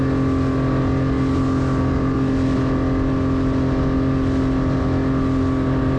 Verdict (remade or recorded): recorded